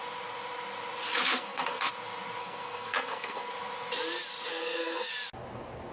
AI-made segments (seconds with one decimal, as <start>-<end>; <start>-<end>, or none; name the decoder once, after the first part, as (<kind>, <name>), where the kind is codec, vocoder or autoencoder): 1.1-1.9 (codec, SNAC); 2.4-3.5; 4.5-5.1

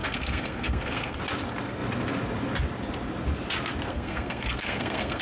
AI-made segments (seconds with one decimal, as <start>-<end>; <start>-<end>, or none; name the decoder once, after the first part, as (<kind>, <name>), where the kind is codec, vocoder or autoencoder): 0.0-1.2 (codec, SNAC); 3.9-5.2

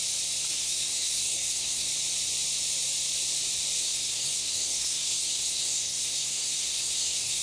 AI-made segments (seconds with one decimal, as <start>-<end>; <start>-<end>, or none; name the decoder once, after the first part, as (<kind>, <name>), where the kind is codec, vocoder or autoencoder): 0.5-1.9 (codec, SNAC); 3.8-7.4

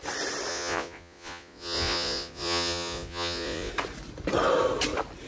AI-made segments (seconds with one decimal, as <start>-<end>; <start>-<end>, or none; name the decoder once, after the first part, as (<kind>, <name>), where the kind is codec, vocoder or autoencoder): 0.5-3.7 (vocoder, Vocos)